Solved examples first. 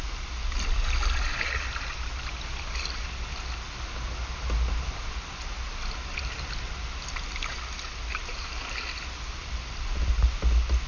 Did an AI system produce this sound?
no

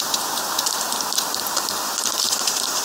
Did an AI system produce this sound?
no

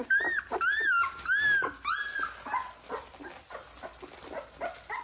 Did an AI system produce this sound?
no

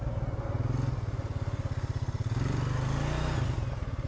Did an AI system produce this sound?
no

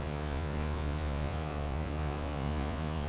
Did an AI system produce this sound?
yes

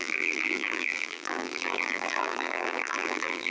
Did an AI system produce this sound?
yes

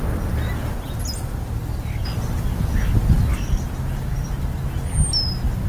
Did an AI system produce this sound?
no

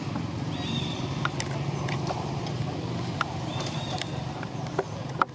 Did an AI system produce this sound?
no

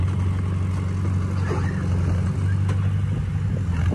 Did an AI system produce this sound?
no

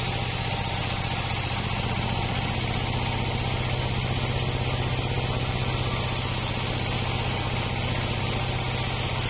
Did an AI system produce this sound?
no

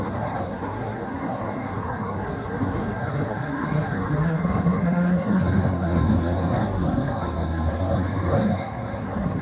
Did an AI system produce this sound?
yes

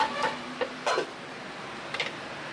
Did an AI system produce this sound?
no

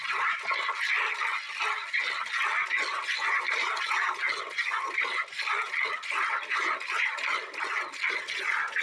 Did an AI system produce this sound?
no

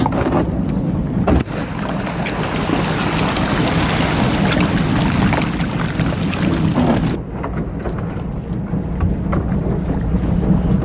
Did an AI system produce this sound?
no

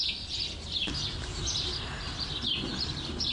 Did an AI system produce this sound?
no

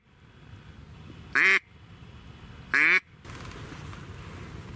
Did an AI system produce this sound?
no